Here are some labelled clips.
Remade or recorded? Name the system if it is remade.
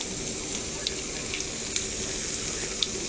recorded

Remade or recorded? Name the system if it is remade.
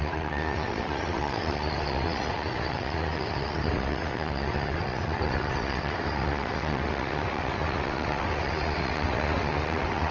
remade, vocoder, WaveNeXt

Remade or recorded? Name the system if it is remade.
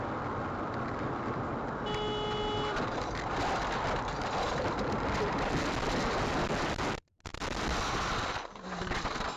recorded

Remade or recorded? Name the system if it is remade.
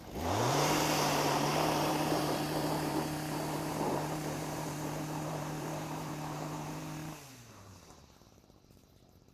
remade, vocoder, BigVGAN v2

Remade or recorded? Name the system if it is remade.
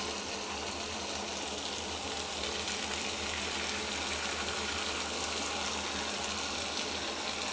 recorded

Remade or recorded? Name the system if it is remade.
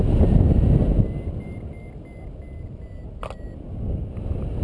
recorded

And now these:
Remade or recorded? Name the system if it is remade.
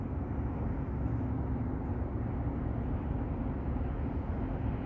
recorded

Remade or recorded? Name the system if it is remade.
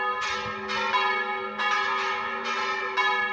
recorded